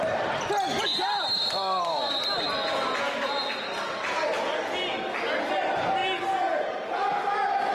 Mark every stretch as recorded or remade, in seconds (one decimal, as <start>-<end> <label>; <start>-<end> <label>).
0.0-7.7 recorded